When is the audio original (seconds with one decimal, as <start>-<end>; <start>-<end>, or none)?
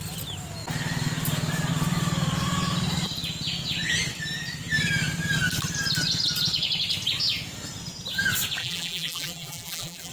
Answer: 0.0-8.6